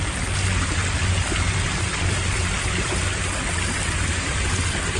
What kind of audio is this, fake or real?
real